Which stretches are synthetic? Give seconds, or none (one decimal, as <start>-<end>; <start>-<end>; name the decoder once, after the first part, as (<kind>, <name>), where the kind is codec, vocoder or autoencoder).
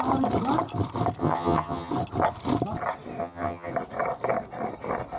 1.2-1.9 (vocoder, HiFi-GAN); 3.2-3.7